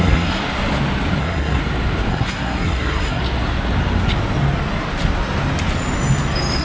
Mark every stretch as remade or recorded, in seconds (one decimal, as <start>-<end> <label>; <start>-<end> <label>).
0.0-0.4 remade; 0.4-1.2 recorded; 1.2-1.6 remade; 1.6-2.1 recorded; 2.1-3.2 remade; 3.2-6.6 recorded